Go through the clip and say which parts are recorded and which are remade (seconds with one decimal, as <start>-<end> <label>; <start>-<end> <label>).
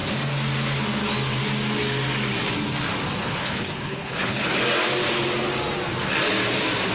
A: 0.0-3.2 recorded; 3.2-4.6 remade; 4.6-6.9 recorded